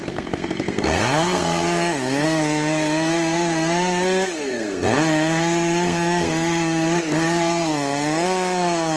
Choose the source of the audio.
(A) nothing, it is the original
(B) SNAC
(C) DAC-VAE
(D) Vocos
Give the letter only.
B